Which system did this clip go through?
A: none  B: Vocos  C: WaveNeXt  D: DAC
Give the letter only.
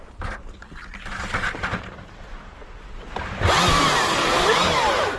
A